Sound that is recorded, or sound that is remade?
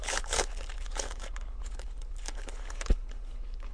remade